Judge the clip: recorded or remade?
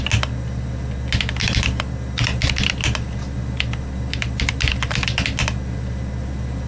recorded